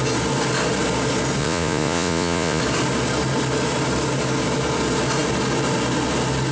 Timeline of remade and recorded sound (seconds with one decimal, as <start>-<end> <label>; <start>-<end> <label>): 0.0-1.4 recorded; 1.4-2.6 remade; 2.6-6.5 recorded